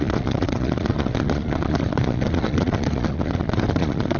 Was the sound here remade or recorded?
remade